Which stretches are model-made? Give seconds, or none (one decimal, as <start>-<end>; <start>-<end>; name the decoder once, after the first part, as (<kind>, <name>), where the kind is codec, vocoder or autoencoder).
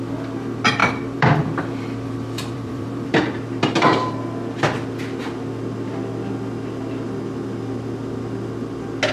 0.8-3.7 (vocoder, BigVGAN v2)